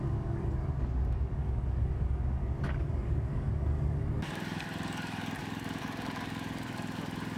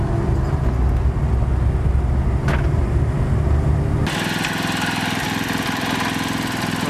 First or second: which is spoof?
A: first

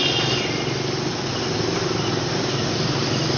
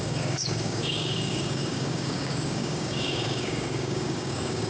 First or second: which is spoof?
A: second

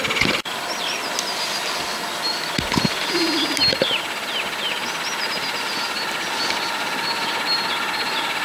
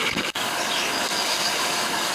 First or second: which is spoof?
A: second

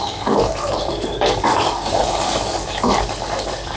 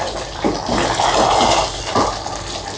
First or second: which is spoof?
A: first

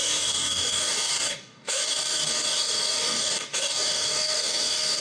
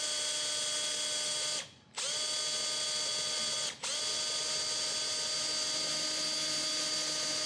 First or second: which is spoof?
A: first